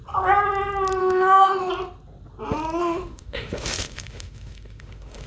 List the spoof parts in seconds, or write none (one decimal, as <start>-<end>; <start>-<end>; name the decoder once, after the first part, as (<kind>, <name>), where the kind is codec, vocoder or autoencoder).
1.0-1.7 (autoencoder, DAC-VAE); 2.8-5.3